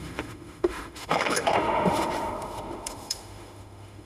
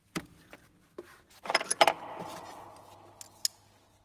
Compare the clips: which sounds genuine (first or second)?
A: second